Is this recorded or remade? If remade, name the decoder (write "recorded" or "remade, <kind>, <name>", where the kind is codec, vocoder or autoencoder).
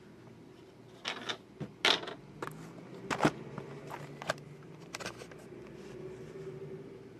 recorded